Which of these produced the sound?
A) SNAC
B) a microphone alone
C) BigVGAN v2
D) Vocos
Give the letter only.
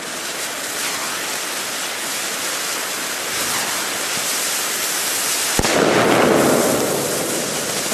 B